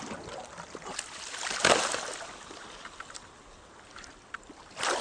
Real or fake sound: real